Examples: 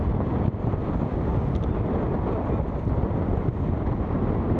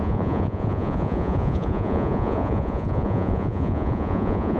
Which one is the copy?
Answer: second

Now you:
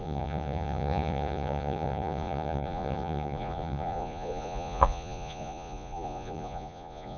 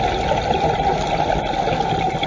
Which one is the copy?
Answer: first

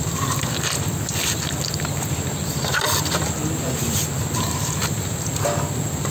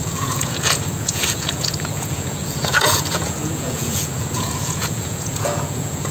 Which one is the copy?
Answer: second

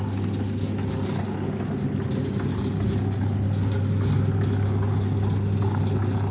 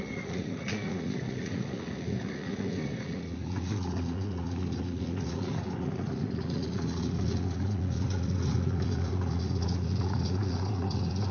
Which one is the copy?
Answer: second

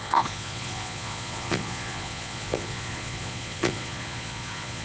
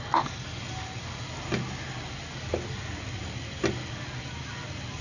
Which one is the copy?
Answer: first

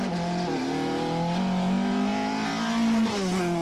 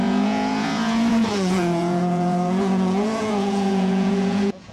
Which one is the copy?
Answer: second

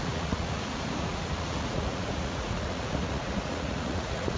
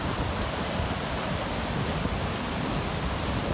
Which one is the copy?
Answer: first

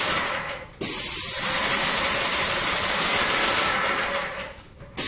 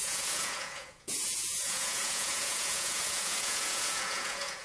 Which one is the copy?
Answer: second